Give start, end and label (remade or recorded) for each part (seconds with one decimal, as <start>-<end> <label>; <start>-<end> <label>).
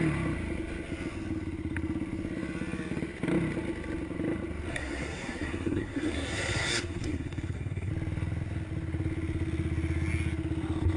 0.0-4.7 recorded; 4.7-7.9 remade; 7.9-11.0 recorded